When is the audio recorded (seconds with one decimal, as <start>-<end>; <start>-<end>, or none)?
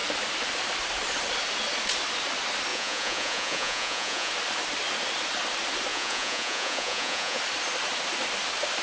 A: 0.0-2.7; 4.3-5.9; 7.4-8.8